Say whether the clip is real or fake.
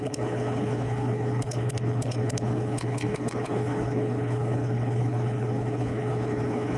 fake